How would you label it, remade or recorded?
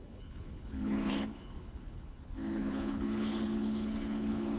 remade